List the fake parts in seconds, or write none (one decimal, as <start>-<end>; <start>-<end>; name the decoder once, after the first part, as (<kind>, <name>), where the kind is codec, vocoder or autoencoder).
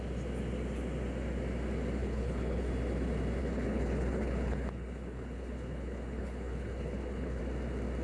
2.0-2.7 (codec, HILCodec); 3.4-7.4